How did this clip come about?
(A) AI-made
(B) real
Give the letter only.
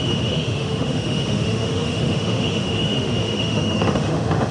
A